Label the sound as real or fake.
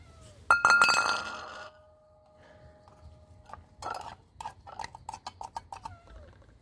real